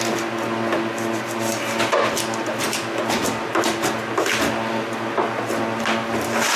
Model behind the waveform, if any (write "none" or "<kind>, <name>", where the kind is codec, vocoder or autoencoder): none